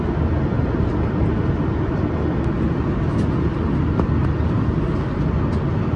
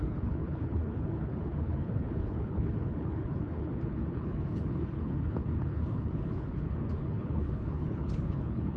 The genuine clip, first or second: first